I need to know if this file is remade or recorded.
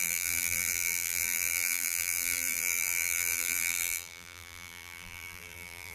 remade